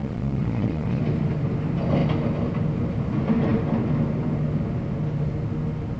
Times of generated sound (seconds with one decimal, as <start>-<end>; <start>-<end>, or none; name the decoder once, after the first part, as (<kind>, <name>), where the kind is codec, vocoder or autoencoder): 0.0-1.0 (vocoder, Vocos)